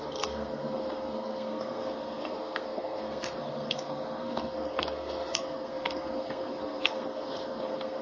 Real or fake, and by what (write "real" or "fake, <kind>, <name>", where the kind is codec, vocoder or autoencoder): fake, codec, SNAC